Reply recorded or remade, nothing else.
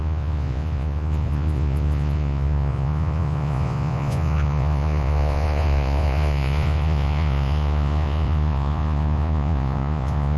remade